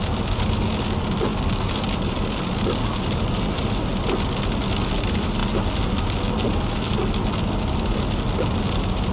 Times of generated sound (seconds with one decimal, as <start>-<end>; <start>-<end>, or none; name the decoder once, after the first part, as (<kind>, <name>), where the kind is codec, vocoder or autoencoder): none